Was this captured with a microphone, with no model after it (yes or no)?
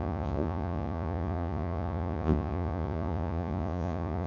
no